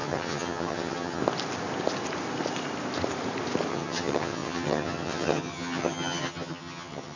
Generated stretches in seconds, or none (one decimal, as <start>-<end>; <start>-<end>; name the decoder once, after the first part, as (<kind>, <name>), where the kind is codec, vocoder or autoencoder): 0.0-1.2 (vocoder, HiFi-GAN); 3.7-7.2